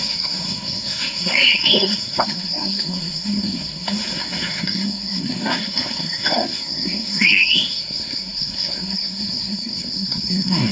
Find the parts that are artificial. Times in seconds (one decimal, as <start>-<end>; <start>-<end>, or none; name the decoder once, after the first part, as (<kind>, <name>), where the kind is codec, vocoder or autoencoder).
0.0-10.7 (codec, SNAC)